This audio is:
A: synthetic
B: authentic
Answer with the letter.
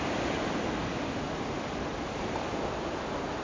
B